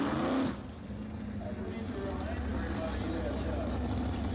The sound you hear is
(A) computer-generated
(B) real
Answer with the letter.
B